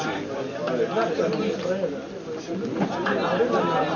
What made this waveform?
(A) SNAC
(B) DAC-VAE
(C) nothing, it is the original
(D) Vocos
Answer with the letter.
C